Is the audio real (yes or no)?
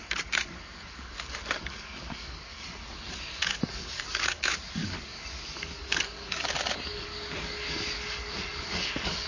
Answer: no